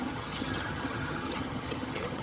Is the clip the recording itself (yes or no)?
no